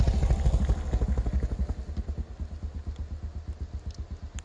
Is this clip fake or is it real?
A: real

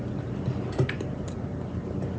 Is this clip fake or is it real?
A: real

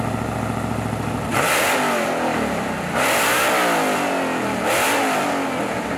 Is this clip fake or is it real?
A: real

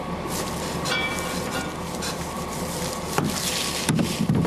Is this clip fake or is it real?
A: real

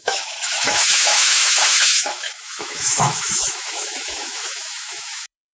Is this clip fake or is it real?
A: fake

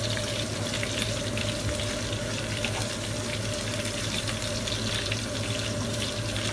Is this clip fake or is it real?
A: real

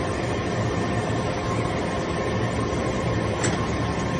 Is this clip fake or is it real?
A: real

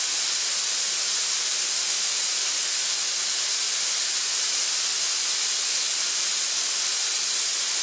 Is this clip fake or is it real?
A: real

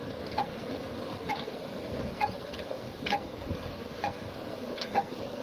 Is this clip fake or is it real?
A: fake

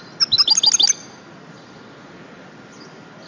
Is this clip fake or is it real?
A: real